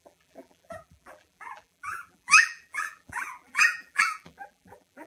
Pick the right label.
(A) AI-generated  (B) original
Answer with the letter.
A